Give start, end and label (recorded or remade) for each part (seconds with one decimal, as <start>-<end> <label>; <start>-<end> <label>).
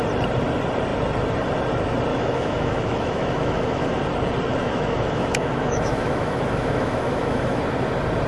0.0-2.1 recorded; 2.1-4.0 remade; 4.0-4.5 recorded; 4.5-7.6 remade; 7.6-8.3 recorded